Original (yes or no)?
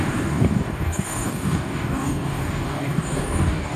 no